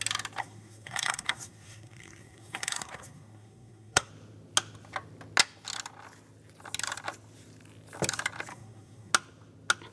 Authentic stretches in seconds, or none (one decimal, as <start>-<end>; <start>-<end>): 0.0-0.4; 4.1-8.5; 9.1-9.9